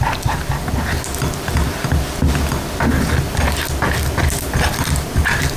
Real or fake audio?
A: real